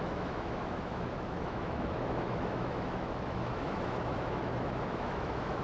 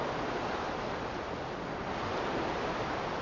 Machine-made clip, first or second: first